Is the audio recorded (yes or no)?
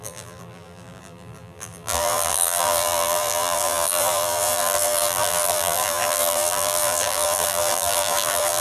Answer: no